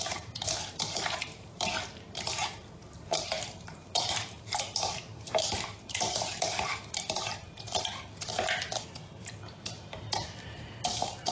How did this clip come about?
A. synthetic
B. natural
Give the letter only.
A